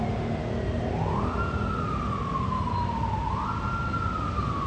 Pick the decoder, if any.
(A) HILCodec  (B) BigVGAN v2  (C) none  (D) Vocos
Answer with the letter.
C